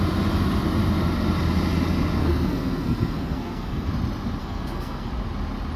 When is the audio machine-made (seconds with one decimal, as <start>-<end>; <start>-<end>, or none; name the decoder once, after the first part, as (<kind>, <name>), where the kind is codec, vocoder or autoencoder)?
2.2-3.9 (codec, SNAC); 4.4-5.1